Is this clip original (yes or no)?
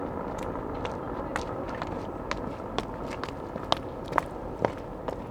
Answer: yes